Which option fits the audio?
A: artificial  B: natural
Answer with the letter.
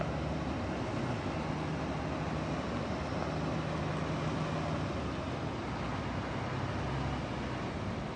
B